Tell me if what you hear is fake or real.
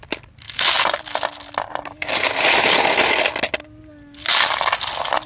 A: real